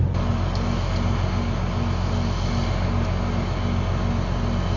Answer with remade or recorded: recorded